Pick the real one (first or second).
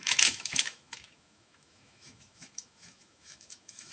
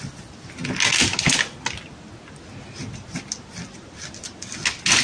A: second